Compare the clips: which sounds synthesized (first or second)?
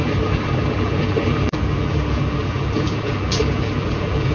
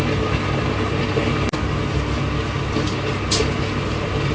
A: first